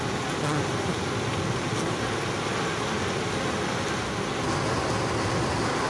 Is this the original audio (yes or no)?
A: yes